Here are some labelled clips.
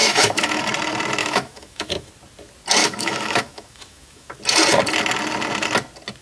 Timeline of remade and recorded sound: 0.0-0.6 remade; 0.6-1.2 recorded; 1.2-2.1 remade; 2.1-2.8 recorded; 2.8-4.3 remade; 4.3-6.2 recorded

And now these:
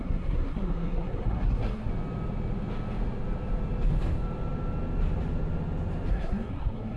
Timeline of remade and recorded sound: 0.0-1.9 remade; 1.9-6.1 recorded; 6.1-7.0 remade

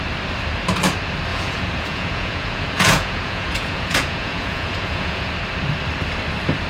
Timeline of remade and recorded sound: 0.0-1.3 recorded; 1.3-5.3 remade; 5.3-6.7 recorded

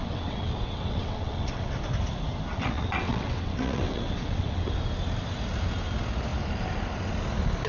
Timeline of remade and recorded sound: 0.0-1.8 remade; 1.8-2.5 recorded; 2.5-4.8 remade; 4.8-7.7 recorded

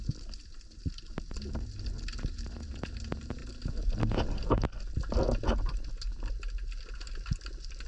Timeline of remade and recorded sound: 0.0-7.9 recorded

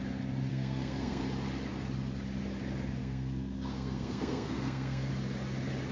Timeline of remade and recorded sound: 0.0-0.5 recorded; 0.5-1.2 remade; 1.2-3.0 recorded; 3.0-5.1 remade; 5.1-5.9 recorded

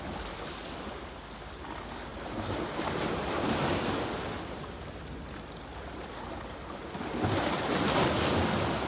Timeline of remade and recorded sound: 0.0-2.1 recorded; 2.1-3.9 remade; 3.9-8.9 recorded